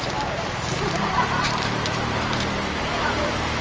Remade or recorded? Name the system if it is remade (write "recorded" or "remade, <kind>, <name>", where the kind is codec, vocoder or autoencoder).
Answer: remade, vocoder, BigVGAN v2